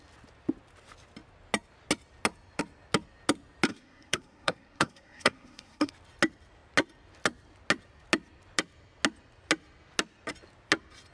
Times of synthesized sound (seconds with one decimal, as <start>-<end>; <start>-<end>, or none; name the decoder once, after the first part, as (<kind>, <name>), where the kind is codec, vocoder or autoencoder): 3.7-5.9 (codec, SNAC)